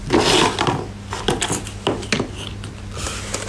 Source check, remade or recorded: recorded